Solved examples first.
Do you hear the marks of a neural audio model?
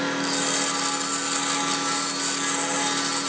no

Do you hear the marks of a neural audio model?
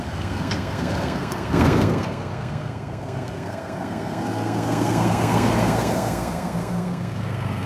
yes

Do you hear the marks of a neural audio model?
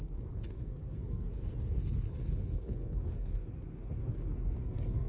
yes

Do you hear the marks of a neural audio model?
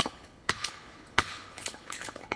yes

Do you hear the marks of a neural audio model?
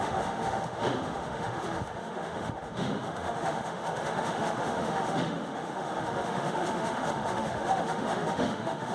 yes